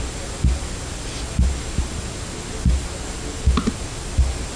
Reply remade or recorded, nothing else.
recorded